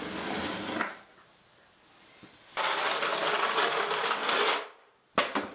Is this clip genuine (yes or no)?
yes